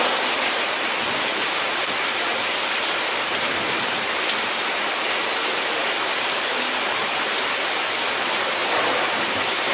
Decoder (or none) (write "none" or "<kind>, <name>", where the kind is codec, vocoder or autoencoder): none